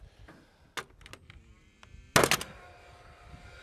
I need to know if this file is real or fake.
real